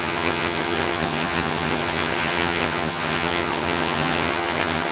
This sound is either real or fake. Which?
fake